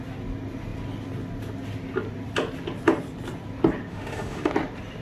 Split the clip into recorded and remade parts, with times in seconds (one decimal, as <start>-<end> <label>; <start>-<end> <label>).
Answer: 0.0-3.9 recorded; 3.9-4.5 remade; 4.5-5.0 recorded